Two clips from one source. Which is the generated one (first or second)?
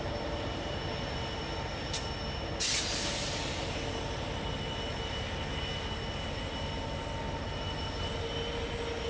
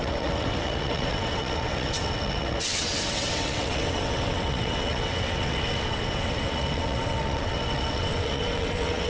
second